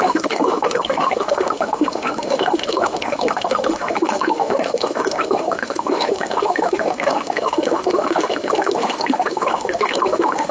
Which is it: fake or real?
fake